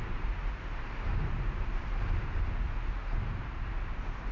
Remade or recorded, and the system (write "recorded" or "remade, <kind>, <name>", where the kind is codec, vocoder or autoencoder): remade, vocoder, BigVGAN v2